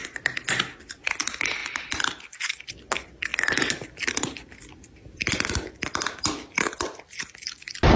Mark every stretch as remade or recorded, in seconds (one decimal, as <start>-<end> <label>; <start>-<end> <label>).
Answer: 0.0-3.3 recorded; 3.3-8.0 remade